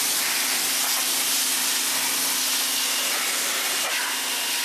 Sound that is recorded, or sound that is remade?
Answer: recorded